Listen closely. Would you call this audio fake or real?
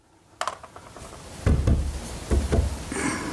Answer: real